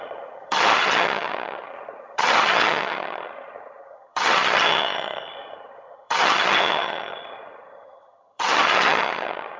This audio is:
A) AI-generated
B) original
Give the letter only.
A